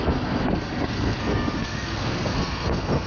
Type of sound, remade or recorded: remade